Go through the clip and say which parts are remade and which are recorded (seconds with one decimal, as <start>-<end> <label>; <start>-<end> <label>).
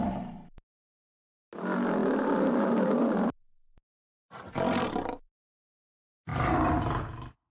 0.0-7.5 recorded